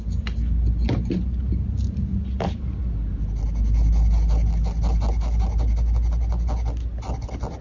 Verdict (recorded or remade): recorded